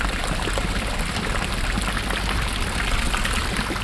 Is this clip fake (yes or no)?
no